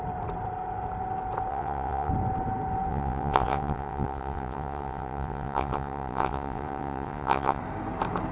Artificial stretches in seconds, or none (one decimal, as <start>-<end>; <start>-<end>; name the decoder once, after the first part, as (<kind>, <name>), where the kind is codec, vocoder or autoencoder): 1.5-2.1 (vocoder, WaveNeXt); 2.9-7.6